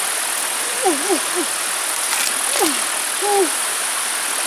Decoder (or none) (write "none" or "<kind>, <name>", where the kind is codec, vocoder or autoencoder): none